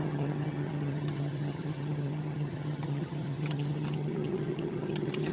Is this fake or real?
fake